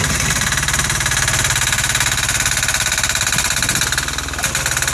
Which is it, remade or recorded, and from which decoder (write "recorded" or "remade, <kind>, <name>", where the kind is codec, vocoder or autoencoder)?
recorded